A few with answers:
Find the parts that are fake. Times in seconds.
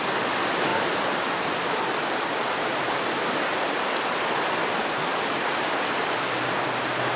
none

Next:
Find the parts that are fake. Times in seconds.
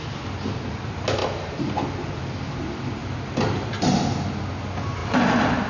3.0-4.0 (vocoder, BigVGAN v2)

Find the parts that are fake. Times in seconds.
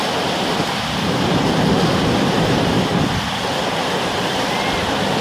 none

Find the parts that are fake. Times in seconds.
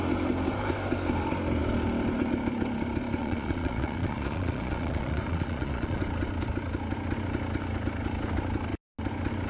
3.2-6.0 (vocoder, Vocos)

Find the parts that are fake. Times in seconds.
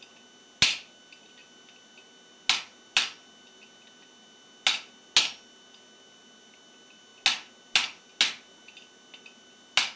none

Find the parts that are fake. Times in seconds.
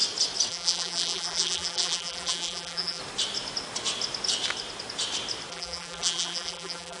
0.5-3.0 (vocoder, BigVGAN v2); 5.5-7.0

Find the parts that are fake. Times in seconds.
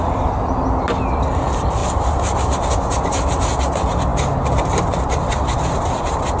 none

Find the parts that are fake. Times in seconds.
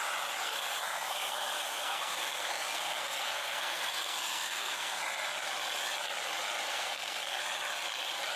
0.4-5.0 (codec, SNAC); 6.7-7.4